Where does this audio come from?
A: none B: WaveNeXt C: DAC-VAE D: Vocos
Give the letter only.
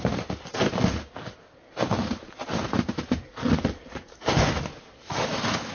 A